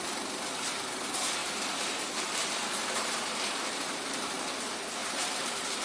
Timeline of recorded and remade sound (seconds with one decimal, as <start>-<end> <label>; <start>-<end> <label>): 0.0-1.4 recorded; 1.4-4.5 remade; 4.5-5.0 recorded; 5.0-5.8 remade